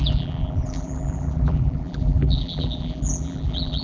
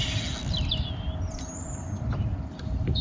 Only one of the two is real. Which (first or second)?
second